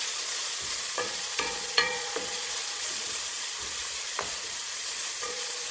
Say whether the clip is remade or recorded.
remade